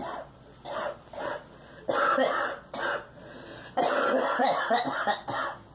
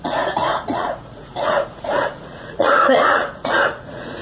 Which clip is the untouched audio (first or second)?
first